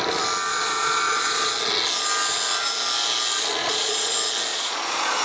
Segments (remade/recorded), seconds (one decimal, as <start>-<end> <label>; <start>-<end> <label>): 0.0-0.5 recorded; 0.5-1.5 remade; 1.5-3.6 recorded; 3.6-4.1 remade; 4.1-4.5 recorded; 4.5-5.2 remade

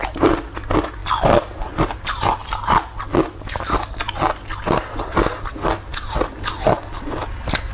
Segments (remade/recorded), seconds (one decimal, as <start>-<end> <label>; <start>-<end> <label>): 0.0-7.7 recorded

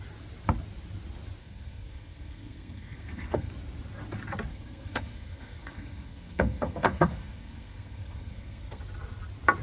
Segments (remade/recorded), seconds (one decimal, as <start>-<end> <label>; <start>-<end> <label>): 0.0-1.4 recorded; 1.4-3.5 remade; 3.5-4.5 recorded; 4.5-8.8 remade; 8.8-9.6 recorded

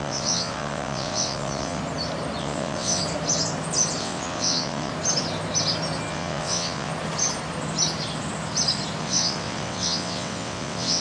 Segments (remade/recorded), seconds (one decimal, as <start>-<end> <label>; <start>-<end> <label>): 0.0-1.8 remade; 1.8-2.4 recorded; 2.4-3.0 remade; 3.0-4.0 recorded; 4.0-4.9 remade; 4.9-6.1 recorded; 6.1-6.9 remade; 6.9-9.0 recorded; 9.0-11.0 remade

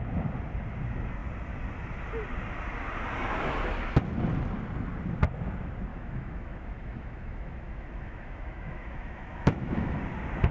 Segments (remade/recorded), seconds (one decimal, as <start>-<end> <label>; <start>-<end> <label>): 0.0-5.9 recorded; 5.9-10.0 remade; 10.0-10.5 recorded

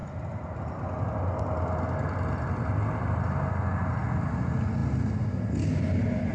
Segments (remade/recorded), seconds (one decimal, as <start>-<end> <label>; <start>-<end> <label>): 0.0-6.3 recorded

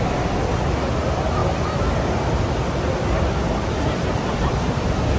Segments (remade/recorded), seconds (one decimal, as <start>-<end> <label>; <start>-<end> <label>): 0.0-5.2 recorded